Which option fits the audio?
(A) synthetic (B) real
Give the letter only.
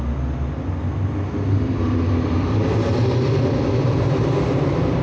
B